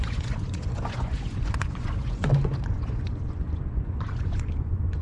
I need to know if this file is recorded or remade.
remade